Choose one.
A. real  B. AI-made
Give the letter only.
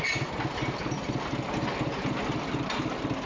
A